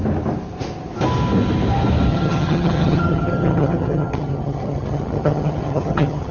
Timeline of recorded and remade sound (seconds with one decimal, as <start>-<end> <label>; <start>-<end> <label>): 0.0-2.1 recorded; 2.1-6.3 remade